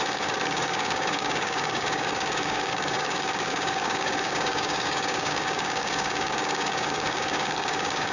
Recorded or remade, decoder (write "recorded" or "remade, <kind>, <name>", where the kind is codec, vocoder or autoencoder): remade, codec, DAC